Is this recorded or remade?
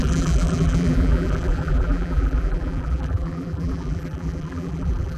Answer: remade